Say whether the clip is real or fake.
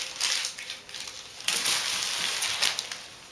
real